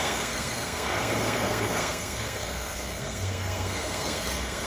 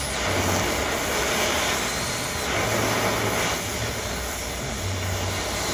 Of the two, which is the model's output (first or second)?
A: first